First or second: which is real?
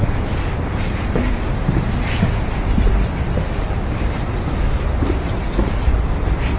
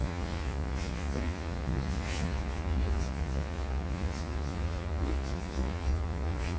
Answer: first